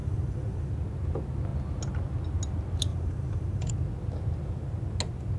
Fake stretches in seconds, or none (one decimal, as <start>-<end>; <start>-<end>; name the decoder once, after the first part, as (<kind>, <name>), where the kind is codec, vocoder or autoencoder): 0.0-0.7 (vocoder, BigVGAN v2); 2.9-3.7